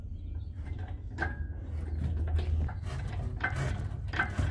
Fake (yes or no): no